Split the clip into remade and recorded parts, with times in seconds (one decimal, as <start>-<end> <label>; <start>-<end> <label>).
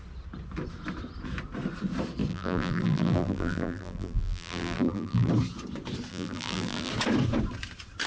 0.0-2.3 recorded; 2.3-5.3 remade; 5.3-6.1 recorded; 6.1-6.9 remade; 6.9-8.1 recorded